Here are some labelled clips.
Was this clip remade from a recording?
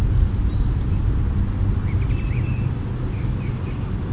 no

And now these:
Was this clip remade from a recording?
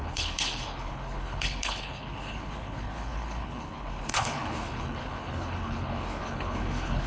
yes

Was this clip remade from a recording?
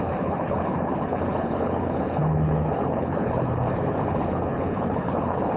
yes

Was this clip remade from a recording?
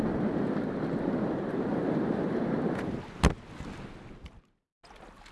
no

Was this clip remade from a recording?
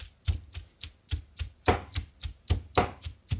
no